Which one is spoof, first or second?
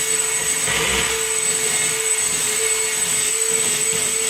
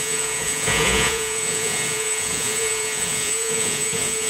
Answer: second